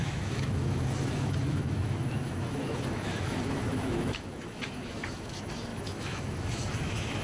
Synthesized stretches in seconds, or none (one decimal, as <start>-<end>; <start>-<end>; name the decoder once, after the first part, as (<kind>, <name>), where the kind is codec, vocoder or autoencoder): 0.0-7.2 (autoencoder, DAC-VAE)